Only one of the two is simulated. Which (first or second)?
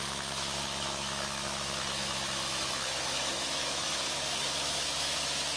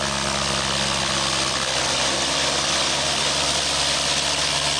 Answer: first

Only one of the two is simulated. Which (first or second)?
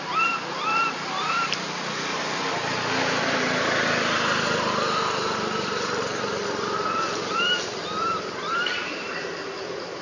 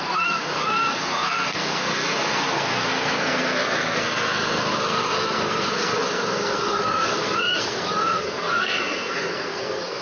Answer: second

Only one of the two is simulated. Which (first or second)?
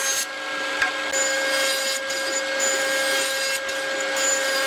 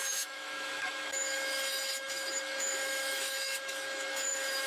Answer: second